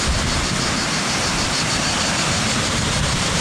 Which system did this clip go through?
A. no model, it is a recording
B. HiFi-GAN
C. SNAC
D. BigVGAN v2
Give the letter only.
D